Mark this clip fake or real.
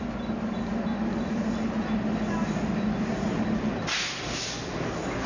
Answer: real